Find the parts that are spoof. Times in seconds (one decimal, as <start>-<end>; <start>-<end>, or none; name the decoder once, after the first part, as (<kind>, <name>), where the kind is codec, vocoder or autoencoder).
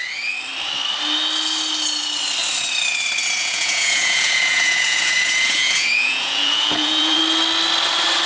3.4-7.2 (vocoder, Vocos)